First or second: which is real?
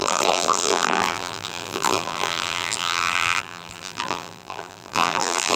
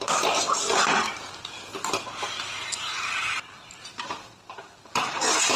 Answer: second